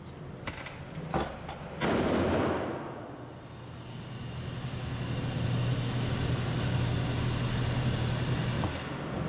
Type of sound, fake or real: real